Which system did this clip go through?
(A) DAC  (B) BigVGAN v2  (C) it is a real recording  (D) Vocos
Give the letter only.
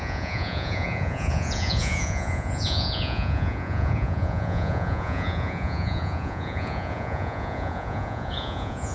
D